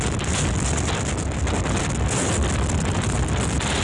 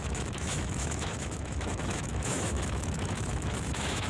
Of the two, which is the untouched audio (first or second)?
first